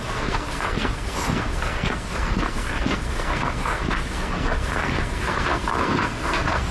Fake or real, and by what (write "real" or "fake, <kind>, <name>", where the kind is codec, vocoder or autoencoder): fake, codec, SNAC